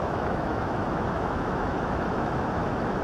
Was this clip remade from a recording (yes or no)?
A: yes